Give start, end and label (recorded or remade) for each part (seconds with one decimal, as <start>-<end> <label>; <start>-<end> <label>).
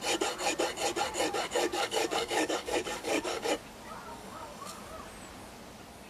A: 0.0-1.7 recorded; 1.7-3.5 remade; 3.5-4.1 recorded; 4.1-4.8 remade; 4.8-6.1 recorded